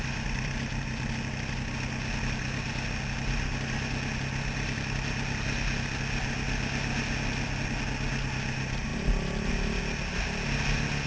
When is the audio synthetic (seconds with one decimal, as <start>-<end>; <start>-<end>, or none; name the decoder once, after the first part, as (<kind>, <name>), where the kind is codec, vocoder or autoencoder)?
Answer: none